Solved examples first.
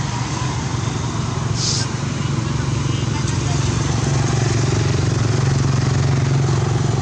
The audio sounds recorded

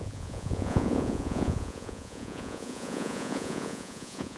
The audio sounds remade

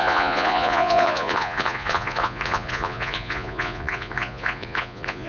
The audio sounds remade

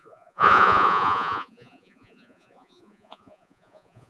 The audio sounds remade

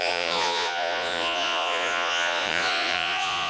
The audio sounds remade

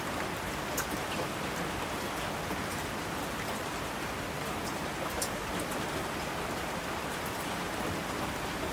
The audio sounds recorded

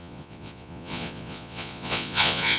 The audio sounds remade